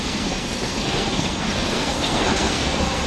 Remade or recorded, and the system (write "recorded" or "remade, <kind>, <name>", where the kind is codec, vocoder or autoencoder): remade, codec, SNAC